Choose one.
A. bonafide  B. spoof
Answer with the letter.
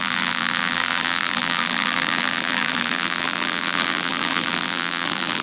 B